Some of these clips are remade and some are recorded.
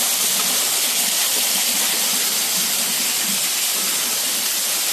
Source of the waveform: recorded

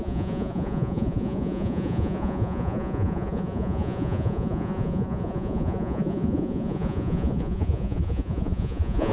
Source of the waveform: remade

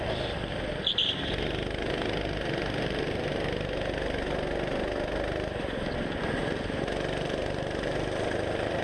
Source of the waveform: recorded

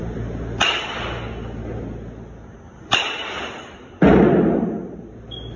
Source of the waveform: recorded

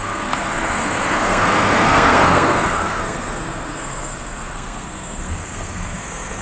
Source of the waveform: remade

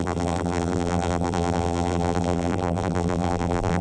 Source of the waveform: remade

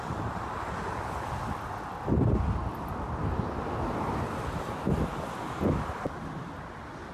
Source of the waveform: recorded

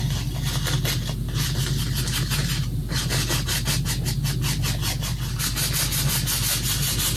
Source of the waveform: recorded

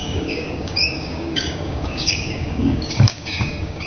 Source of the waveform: remade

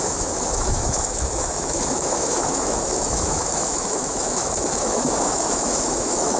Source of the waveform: remade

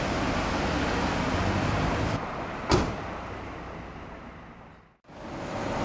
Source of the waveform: recorded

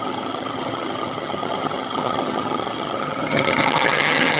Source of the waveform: remade